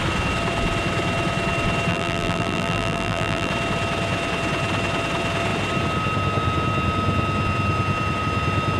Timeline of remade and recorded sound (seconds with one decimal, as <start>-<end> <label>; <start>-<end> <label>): 0.0-1.9 recorded; 1.9-3.5 remade; 3.5-8.8 recorded